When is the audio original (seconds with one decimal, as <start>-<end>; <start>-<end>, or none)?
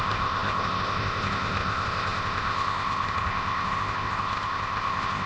none